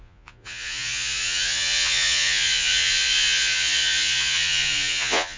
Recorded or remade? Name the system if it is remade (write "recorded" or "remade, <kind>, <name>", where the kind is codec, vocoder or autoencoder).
remade, vocoder, Vocos